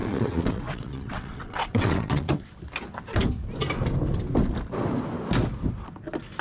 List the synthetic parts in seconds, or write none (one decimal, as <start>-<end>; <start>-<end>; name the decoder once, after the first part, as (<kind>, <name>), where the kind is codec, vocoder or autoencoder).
0.0-2.5 (vocoder, WaveNeXt)